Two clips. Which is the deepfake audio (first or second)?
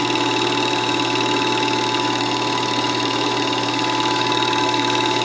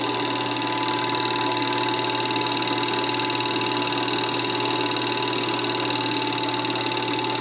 first